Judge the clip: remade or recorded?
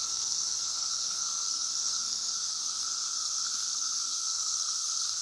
remade